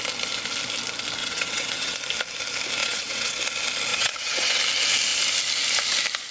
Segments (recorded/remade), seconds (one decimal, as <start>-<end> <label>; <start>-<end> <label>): 0.0-1.2 recorded; 1.2-2.0 remade; 2.0-2.8 recorded; 2.8-3.4 remade; 3.4-3.9 recorded; 3.9-4.6 remade; 4.6-6.3 recorded